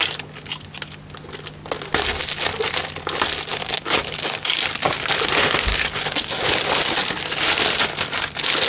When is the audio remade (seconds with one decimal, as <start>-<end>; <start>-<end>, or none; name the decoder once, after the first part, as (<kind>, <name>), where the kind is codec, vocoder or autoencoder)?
3.5-4.5 (codec, DAC); 5.7-6.5